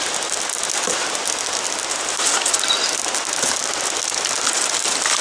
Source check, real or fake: real